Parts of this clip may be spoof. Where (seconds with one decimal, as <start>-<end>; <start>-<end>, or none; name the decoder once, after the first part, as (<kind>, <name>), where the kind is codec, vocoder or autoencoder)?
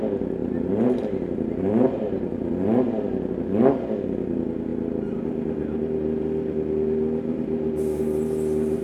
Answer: 0.4-2.5 (vocoder, BigVGAN v2)